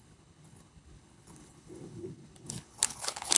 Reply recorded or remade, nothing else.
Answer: remade